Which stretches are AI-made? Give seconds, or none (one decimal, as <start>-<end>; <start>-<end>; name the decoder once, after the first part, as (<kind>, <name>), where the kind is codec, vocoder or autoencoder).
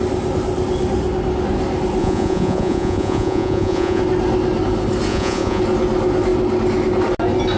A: 2.0-4.0 (vocoder, Vocos); 5.1-5.6